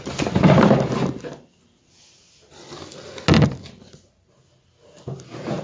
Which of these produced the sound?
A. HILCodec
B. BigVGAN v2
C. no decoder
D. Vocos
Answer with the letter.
C